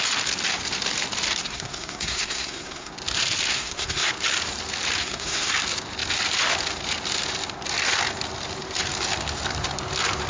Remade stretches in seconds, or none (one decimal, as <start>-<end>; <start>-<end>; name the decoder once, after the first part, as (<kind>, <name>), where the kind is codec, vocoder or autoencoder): 1.4-2.9 (codec, SNAC); 3.5-4.1; 5.0-5.5